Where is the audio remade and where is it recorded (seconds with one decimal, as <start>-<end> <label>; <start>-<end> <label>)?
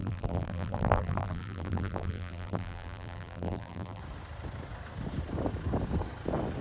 0.0-4.0 remade; 4.0-6.6 recorded